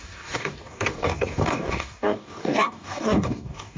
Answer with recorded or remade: remade